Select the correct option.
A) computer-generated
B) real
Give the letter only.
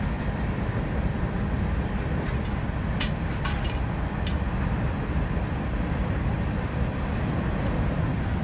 B